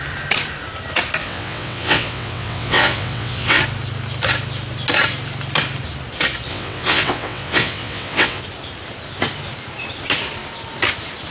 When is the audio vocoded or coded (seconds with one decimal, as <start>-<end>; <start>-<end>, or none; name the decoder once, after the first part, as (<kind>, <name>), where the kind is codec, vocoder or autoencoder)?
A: 1.2-3.6 (vocoder, WaveNeXt); 6.5-8.4